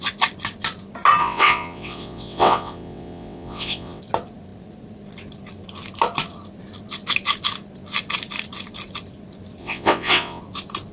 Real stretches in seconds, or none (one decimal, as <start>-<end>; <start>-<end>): 0.0-1.2; 4.0-9.6; 10.4-10.9